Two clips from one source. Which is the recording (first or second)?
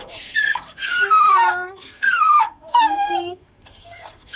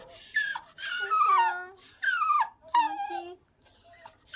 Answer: second